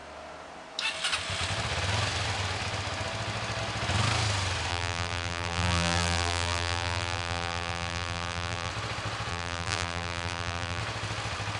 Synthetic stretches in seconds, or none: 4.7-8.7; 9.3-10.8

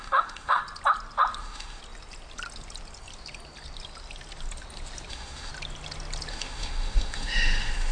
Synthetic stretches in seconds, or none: 0.0-0.6; 1.4-1.8; 5.1-5.5; 6.3-7.9

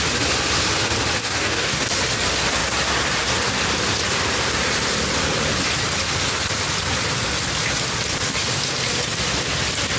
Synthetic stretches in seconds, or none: 1.2-1.8

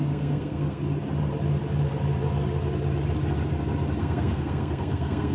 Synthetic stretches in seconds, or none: 0.0-0.8; 4.0-5.3